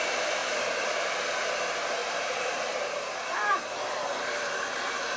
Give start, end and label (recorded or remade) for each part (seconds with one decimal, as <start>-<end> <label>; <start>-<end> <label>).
0.0-0.4 recorded; 0.4-1.2 remade; 1.2-2.0 recorded; 2.0-5.2 remade